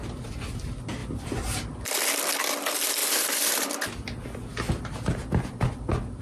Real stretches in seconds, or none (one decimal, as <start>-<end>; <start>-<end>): 0.0-6.2